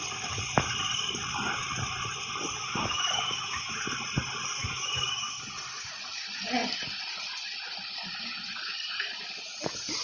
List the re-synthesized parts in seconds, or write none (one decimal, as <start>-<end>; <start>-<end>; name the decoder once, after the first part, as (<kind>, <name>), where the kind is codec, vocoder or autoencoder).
2.6-3.8 (autoencoder, DAC-VAE); 4.6-5.4